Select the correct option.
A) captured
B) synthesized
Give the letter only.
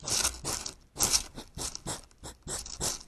A